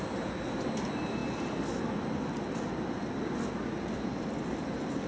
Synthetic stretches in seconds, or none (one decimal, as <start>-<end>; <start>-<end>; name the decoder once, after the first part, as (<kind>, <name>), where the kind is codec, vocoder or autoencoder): none